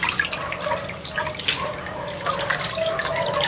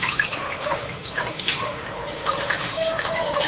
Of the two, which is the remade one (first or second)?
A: second